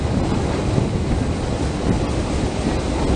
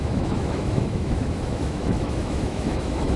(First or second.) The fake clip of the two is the second